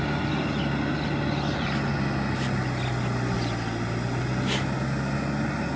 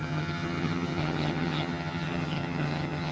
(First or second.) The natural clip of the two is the first